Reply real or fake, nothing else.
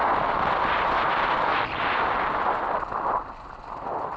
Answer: real